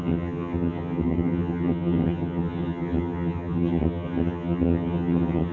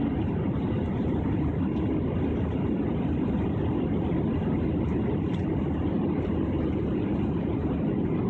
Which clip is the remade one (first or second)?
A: first